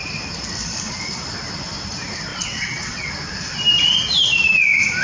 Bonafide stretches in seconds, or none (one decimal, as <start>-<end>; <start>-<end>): 0.0-2.3; 3.1-5.0